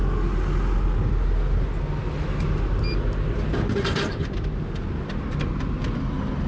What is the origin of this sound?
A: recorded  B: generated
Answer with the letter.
A